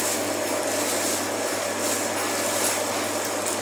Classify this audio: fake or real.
real